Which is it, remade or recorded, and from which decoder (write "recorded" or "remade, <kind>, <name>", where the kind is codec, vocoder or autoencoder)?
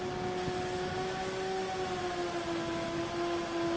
recorded